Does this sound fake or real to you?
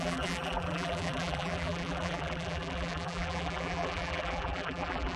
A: fake